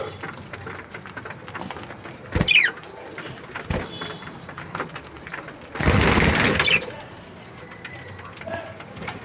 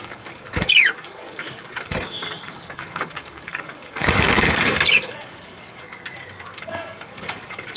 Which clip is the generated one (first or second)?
second